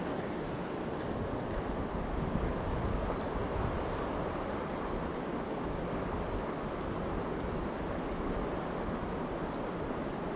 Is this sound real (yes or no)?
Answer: yes